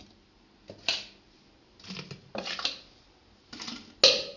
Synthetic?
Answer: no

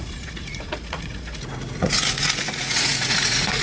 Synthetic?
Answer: yes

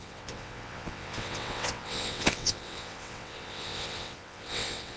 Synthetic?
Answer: yes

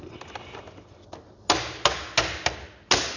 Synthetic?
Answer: no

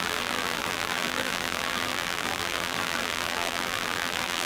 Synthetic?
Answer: yes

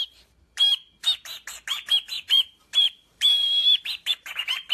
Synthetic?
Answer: yes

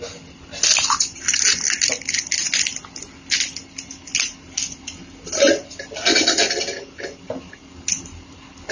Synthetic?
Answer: no